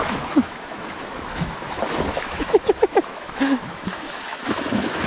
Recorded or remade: remade